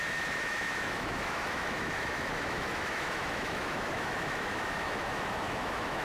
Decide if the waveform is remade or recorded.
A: remade